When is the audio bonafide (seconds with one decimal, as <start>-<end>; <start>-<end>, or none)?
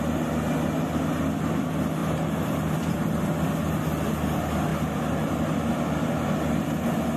0.0-2.0; 3.2-7.2